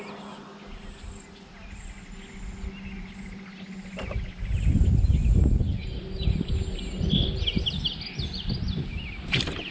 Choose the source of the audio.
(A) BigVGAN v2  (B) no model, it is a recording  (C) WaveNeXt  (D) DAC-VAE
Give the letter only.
B